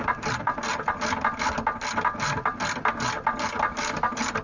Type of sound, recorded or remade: recorded